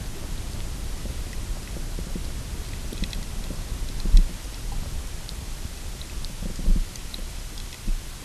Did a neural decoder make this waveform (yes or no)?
no